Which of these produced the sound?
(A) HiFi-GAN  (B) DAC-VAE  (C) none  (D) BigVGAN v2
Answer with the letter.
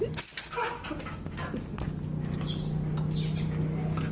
C